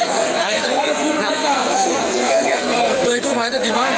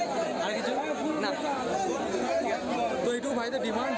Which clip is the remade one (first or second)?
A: first